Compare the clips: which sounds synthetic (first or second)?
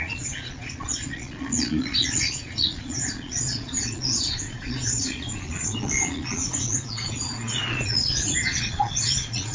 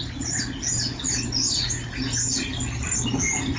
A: first